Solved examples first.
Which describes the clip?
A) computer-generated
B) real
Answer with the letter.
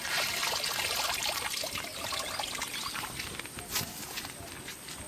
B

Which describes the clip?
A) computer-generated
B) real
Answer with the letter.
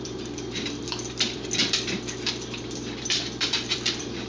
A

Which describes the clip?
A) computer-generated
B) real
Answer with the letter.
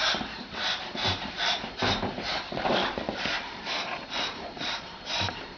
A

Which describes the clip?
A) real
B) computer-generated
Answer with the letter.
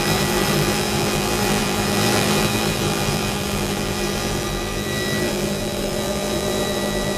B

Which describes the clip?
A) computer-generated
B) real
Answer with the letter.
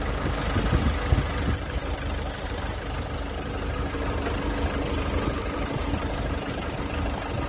B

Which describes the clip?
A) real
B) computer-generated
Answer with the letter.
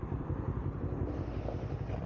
B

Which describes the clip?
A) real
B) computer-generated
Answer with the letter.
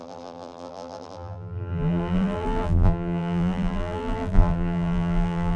B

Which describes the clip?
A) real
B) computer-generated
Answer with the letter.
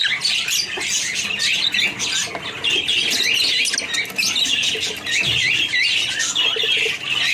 A